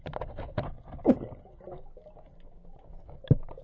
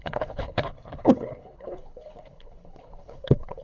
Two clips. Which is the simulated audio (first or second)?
second